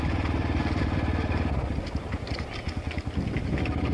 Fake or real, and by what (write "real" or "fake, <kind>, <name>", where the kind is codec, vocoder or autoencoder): real